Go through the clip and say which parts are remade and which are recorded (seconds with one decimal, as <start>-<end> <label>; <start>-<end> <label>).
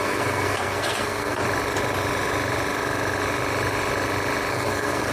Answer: 0.0-1.4 remade; 1.4-4.5 recorded; 4.5-5.1 remade